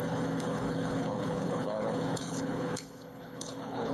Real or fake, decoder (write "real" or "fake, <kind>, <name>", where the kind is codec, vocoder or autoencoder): fake, codec, HILCodec